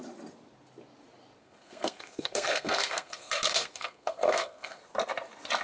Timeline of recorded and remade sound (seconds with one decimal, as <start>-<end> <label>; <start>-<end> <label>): 0.0-1.4 recorded; 1.4-4.8 remade; 4.8-5.6 recorded